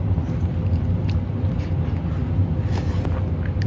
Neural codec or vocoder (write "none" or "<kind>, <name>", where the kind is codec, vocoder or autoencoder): none